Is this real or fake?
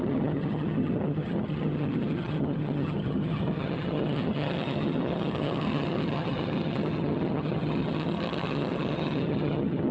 fake